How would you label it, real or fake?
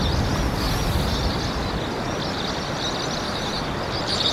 real